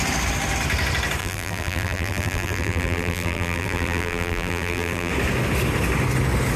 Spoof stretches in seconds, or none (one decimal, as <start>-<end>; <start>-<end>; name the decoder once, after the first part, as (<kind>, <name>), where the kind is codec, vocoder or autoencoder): 1.2-5.1 (vocoder, BigVGAN v2)